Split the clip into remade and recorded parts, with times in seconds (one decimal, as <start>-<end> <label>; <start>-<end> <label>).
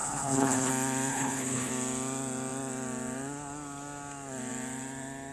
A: 0.0-0.7 remade; 0.7-1.1 recorded; 1.1-1.7 remade; 1.7-5.3 recorded